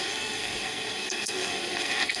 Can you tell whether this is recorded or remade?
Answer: remade